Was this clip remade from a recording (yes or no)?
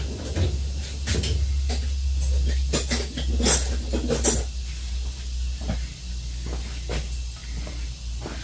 no